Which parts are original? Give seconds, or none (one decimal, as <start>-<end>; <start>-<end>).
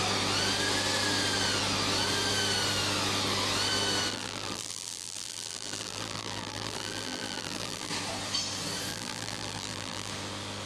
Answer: 0.0-4.1; 7.9-8.9; 10.1-10.7